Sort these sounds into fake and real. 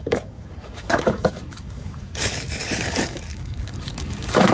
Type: fake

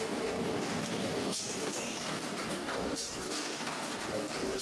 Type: fake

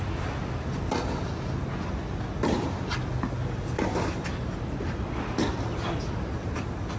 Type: real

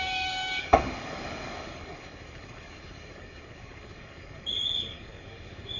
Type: fake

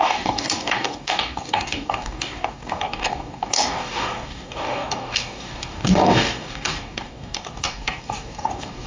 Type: fake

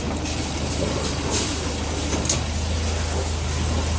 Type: real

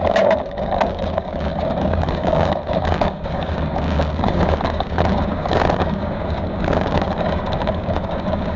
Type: fake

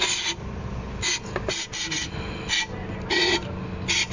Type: real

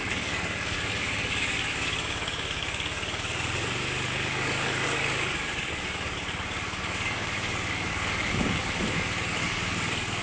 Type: fake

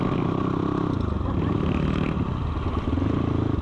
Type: real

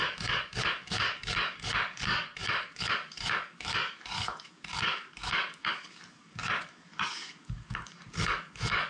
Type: fake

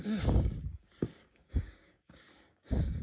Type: fake